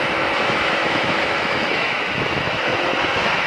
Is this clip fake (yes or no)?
yes